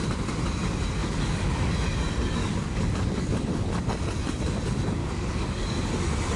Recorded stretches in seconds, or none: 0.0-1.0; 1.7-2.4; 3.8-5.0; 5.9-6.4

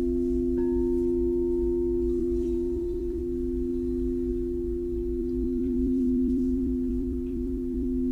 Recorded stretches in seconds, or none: 0.0-2.2; 3.2-5.2